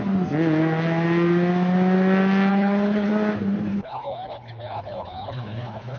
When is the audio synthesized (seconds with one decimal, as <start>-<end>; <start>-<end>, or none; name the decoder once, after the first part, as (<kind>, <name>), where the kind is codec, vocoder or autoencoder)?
2.5-3.1 (codec, HILCodec); 3.7-6.0